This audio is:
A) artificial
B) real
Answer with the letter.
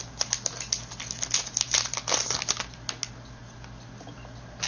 B